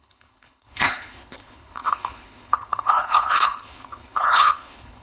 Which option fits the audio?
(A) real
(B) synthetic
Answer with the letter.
B